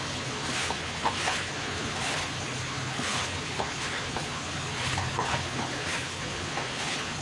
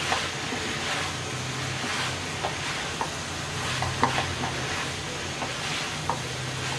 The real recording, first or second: second